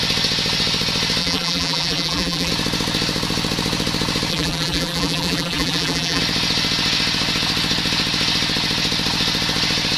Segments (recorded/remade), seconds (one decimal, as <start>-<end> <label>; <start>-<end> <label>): 0.0-1.2 recorded; 1.2-2.5 remade; 2.5-4.3 recorded; 4.3-6.2 remade; 6.2-10.0 recorded